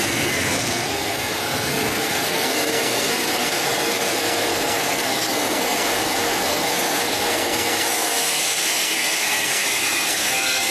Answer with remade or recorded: remade